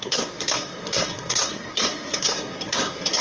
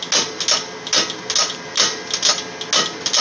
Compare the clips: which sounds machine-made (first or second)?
first